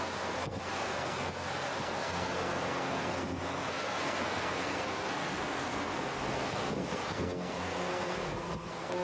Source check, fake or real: fake